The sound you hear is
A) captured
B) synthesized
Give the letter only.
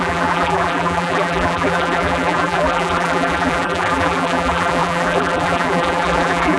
B